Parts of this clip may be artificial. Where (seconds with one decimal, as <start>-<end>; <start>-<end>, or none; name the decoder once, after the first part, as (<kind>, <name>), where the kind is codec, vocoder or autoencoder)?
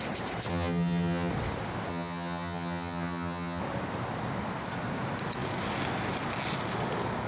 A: 0.5-1.3 (vocoder, HiFi-GAN); 1.9-3.6